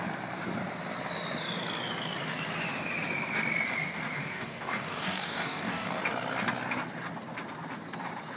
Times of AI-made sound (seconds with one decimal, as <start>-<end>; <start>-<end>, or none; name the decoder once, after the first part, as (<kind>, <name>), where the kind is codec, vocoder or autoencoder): 4.2-6.0 (codec, DAC)